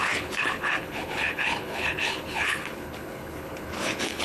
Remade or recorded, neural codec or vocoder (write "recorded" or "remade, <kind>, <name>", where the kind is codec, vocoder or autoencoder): remade, codec, HILCodec